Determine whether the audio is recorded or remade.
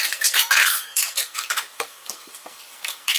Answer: remade